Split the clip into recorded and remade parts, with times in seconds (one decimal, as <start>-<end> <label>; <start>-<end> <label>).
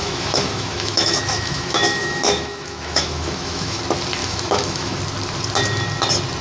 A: 0.0-3.8 remade; 3.8-4.2 recorded; 4.2-5.0 remade; 5.0-6.4 recorded